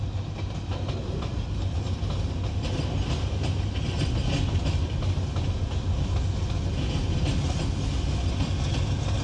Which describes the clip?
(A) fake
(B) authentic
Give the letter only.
B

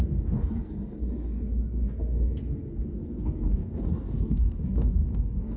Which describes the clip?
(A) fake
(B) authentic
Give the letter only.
A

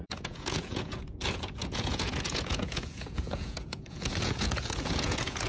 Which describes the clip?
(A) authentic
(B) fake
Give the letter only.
B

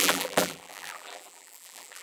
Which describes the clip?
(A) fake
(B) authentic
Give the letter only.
A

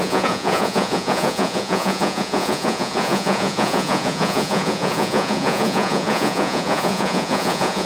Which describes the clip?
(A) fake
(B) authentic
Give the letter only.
A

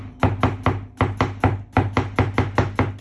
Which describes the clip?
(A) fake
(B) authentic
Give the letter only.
B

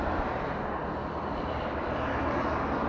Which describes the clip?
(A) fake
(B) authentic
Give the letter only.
B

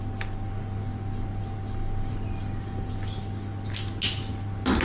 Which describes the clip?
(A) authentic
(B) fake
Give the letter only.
A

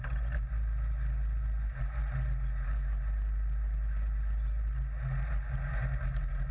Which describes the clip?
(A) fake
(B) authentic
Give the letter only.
B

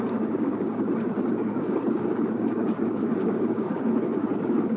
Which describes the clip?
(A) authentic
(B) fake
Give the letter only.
B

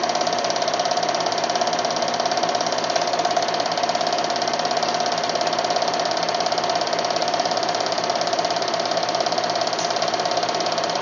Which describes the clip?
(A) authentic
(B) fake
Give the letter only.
A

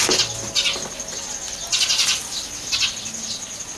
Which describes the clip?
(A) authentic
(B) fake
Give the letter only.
A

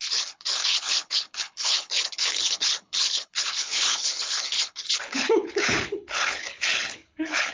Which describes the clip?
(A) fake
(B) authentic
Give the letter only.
A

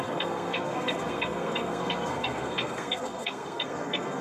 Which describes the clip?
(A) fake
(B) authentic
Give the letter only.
A